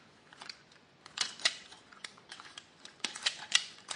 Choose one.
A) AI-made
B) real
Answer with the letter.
A